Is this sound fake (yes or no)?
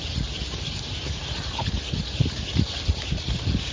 no